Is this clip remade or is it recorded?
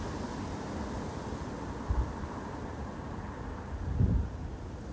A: recorded